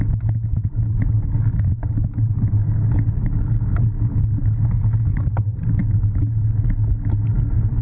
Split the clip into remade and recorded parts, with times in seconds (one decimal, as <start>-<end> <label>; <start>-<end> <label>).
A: 0.0-7.8 recorded